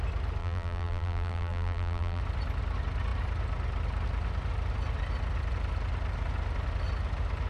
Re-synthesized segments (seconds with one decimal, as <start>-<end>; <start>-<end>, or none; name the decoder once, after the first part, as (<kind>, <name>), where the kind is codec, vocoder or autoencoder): 0.4-2.2 (vocoder, BigVGAN v2)